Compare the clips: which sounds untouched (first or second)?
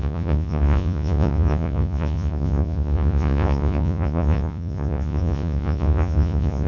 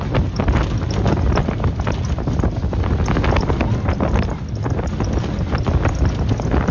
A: second